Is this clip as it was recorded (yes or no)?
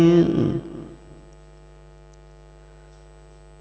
yes